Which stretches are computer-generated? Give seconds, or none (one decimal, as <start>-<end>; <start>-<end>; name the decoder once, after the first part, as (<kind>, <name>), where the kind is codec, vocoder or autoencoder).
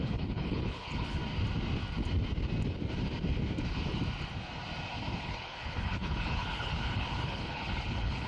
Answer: 0.0-1.2 (codec, HILCodec); 5.2-8.3